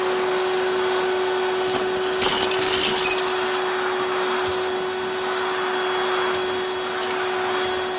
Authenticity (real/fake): real